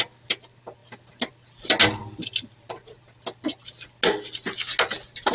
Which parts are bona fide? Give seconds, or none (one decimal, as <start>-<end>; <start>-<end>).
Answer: 0.0-5.3